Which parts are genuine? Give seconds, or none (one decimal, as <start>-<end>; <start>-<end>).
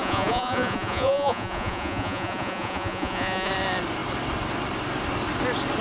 3.5-5.8